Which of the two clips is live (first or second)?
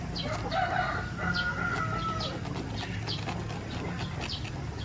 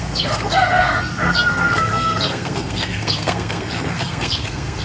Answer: first